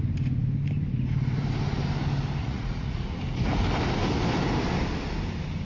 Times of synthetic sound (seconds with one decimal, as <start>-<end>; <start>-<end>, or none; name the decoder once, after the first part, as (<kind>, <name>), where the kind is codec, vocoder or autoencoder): 2.4-3.2 (vocoder, Vocos)